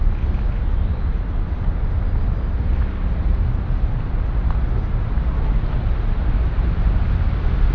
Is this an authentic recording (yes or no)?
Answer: yes